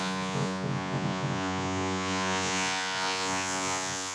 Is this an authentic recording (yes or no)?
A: no